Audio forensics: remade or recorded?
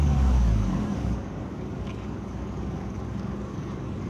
remade